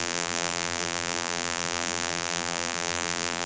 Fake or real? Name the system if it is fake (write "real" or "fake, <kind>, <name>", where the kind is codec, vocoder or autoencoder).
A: fake, vocoder, BigVGAN v2